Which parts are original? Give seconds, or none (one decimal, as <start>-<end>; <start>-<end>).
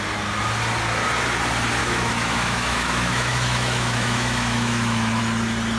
0.0-1.8; 5.2-5.8